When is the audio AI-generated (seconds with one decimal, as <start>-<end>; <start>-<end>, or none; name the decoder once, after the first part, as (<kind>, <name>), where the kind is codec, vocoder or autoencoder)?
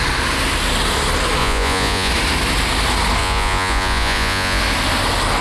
1.4-2.1 (vocoder, Vocos); 3.2-4.6